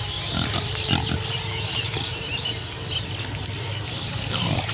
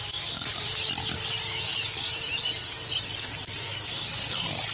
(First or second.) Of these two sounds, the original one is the second